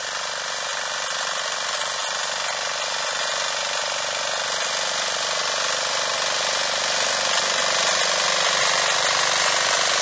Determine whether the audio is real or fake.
real